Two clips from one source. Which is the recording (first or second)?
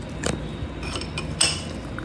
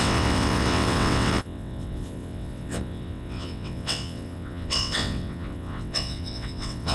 first